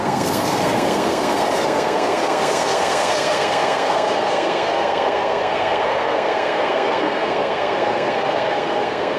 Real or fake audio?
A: fake